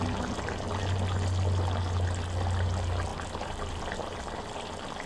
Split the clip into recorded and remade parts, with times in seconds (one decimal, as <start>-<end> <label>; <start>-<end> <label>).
0.0-3.1 recorded; 3.1-3.7 remade; 3.7-5.1 recorded